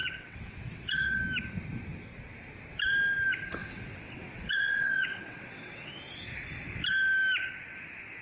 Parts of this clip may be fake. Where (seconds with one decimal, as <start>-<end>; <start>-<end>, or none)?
0.0-1.2; 3.6-5.9